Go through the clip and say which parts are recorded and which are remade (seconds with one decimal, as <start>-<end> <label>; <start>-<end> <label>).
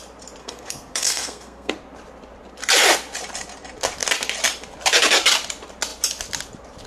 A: 0.0-0.4 recorded; 0.4-1.7 remade; 1.7-6.9 recorded